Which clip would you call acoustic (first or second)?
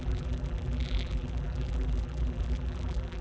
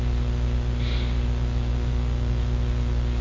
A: second